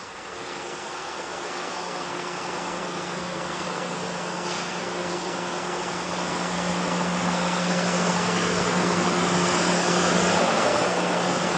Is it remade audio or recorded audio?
remade